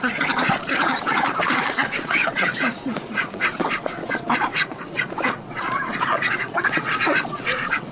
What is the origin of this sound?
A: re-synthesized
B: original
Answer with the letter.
A